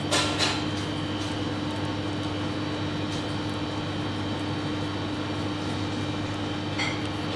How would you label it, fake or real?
real